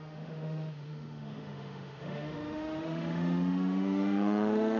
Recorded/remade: remade